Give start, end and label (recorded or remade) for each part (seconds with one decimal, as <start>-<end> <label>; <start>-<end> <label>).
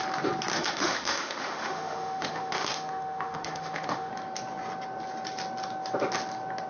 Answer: 0.0-0.5 recorded; 0.5-4.1 remade; 4.1-6.7 recorded